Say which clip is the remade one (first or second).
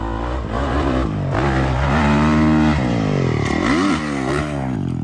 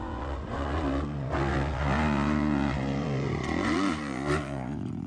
second